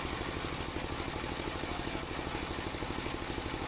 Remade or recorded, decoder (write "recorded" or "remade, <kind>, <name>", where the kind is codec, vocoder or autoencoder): recorded